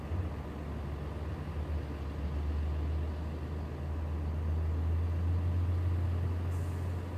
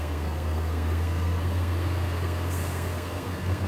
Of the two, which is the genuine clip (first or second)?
first